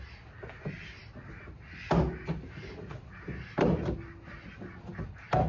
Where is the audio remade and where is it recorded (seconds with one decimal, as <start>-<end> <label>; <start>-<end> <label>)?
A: 0.0-5.5 recorded